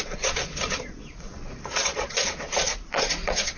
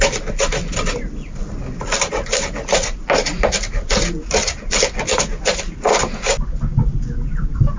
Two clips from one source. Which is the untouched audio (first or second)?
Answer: second